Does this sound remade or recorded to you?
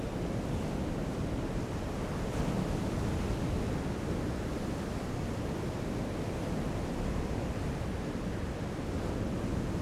recorded